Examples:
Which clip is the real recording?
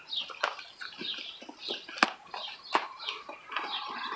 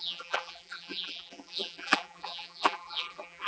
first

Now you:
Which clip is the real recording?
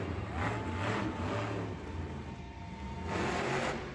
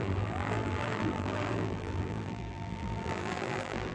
first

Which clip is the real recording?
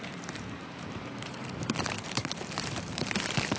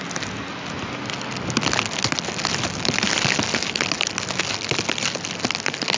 second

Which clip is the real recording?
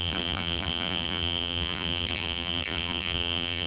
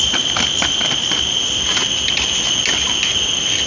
second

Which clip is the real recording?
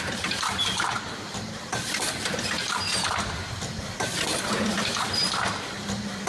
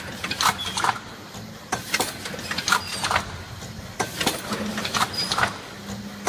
second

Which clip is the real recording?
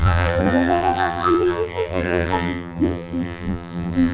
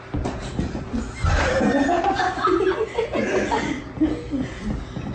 second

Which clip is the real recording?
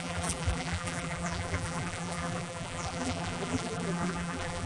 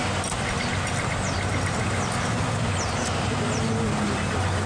second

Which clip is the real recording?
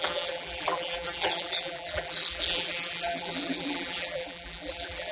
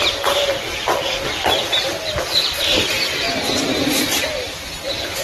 second